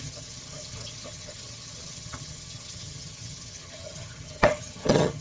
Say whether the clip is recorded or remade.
remade